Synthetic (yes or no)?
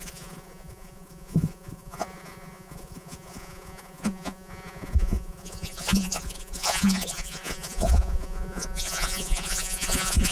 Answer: yes